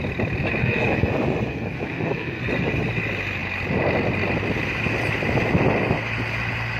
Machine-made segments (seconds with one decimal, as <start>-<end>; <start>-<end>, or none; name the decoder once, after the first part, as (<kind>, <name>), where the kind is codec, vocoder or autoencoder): 0.6-1.1 (codec, SNAC); 1.5-2.4